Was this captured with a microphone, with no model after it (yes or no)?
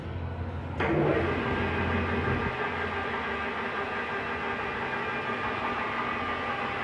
yes